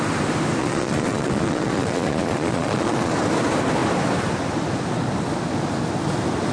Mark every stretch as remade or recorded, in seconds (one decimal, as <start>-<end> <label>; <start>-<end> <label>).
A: 0.0-0.6 recorded; 0.6-3.1 remade; 3.1-6.5 recorded